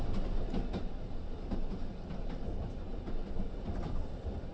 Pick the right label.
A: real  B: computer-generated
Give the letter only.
A